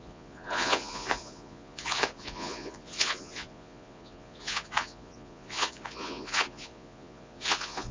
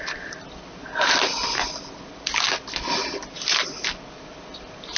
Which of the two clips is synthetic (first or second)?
first